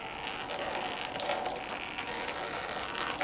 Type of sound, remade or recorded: recorded